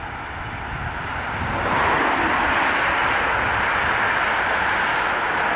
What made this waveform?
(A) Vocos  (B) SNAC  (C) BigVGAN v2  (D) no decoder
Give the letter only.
D